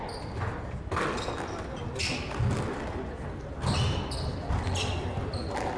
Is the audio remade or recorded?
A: recorded